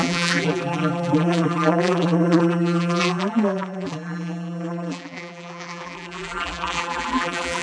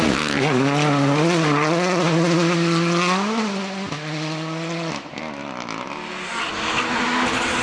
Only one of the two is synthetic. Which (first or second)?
first